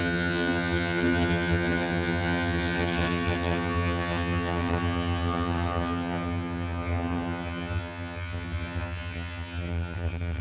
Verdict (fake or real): fake